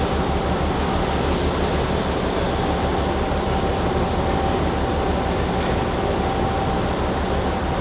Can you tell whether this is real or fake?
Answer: real